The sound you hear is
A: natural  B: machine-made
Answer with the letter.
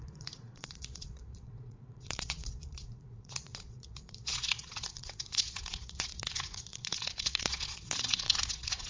B